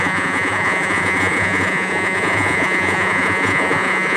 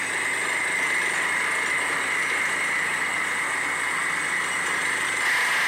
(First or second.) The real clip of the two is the second